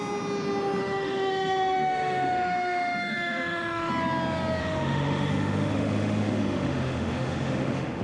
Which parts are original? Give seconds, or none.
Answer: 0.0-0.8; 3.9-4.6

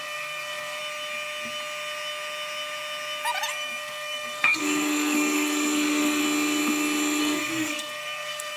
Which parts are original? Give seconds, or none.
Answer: 0.8-3.5; 6.2-7.2

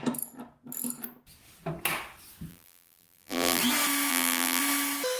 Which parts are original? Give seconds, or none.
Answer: 0.0-2.5; 3.6-4.1; 4.6-5.2

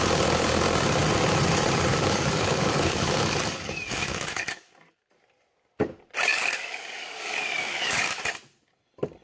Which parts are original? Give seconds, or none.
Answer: 0.0-1.9; 4.7-6.3; 8.2-9.2

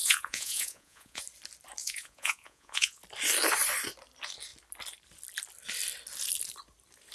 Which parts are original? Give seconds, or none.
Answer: 1.2-1.8; 3.0-7.1

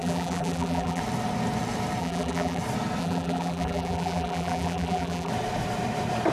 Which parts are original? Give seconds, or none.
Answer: 1.0-2.0; 2.6-3.0; 5.3-6.3